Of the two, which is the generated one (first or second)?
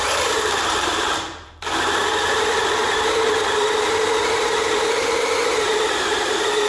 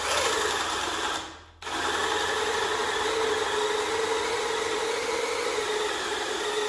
first